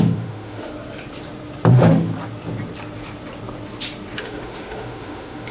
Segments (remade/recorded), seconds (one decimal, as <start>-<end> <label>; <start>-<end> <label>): 0.0-0.7 remade; 0.7-1.7 recorded; 1.7-2.1 remade; 2.1-4.2 recorded; 4.2-5.5 remade